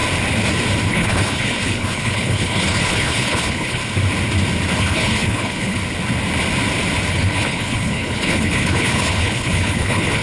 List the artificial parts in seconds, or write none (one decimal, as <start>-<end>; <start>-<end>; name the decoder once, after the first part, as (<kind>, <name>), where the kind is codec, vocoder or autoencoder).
0.9-3.8 (codec, HILCodec); 4.8-5.8; 7.1-10.2